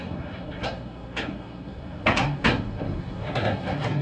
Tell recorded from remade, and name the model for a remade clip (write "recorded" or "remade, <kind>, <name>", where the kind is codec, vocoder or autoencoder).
remade, codec, SNAC